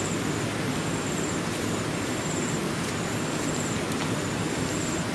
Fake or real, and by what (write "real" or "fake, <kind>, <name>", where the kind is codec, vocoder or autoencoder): real